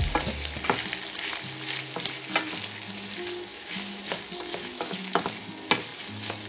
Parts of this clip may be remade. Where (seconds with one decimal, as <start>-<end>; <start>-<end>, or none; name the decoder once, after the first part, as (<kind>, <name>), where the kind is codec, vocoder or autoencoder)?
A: 3.5-4.0 (autoencoder, DAC-VAE); 4.5-5.2